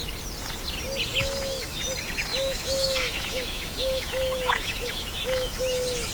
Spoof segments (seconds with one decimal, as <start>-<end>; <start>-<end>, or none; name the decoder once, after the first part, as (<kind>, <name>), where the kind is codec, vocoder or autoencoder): 1.2-1.8 (autoencoder, DAC-VAE); 2.3-6.1